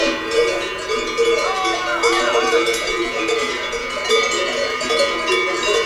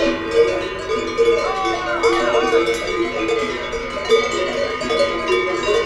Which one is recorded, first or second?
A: second